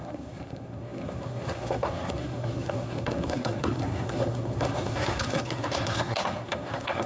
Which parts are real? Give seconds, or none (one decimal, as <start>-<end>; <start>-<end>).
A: none